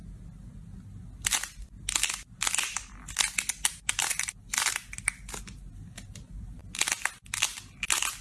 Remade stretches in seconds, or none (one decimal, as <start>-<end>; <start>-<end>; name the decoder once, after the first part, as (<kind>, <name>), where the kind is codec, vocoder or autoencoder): none